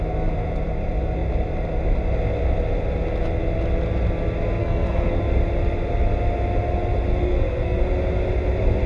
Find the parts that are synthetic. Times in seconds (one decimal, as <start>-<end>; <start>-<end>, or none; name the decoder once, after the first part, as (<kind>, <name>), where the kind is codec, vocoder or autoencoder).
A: 4.6-5.2 (codec, SNAC); 7.2-7.8